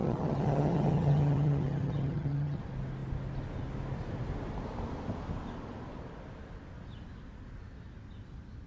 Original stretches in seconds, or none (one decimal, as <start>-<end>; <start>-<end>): 2.6-8.7